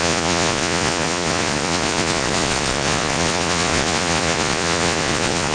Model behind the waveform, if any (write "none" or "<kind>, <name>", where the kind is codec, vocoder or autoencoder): vocoder, Vocos